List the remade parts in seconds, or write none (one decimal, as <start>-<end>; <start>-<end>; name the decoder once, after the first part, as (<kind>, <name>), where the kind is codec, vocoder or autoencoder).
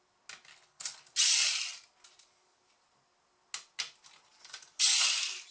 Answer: 0.5-1.0 (codec, HILCodec)